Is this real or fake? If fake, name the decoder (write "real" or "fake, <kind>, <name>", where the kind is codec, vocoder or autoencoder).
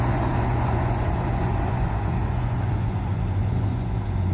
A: fake, vocoder, Vocos